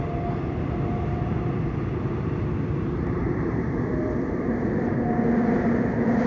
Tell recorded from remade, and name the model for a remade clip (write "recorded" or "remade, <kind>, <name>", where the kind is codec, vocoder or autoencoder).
recorded